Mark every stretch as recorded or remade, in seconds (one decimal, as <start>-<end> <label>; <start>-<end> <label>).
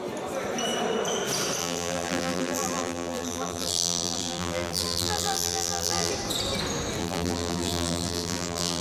0.0-1.6 recorded; 1.6-6.1 remade; 6.1-7.0 recorded; 7.0-8.8 remade